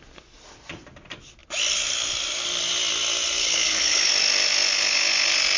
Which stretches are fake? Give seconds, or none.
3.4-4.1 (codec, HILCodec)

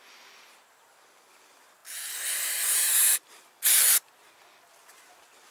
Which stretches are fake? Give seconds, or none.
none